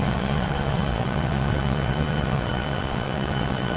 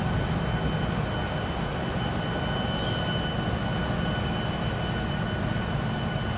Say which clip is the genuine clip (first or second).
second